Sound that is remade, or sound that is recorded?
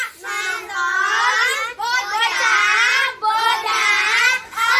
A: recorded